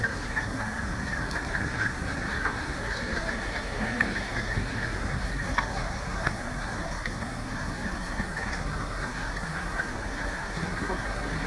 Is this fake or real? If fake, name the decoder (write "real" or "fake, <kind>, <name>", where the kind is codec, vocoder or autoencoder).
fake, codec, SNAC